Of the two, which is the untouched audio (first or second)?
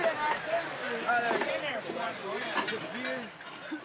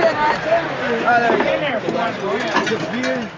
first